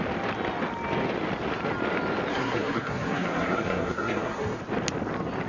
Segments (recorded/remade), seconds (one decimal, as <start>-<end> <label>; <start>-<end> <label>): 0.0-2.3 recorded; 2.3-4.6 remade; 4.6-5.5 recorded